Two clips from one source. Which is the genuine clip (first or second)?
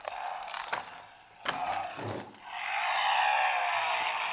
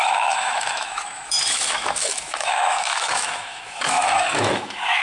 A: first